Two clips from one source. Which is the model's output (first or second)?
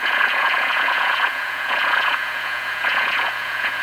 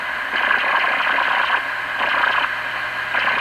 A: first